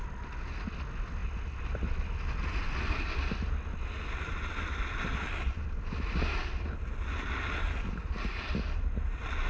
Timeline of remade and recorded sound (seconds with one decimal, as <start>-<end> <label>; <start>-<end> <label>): 0.0-9.5 recorded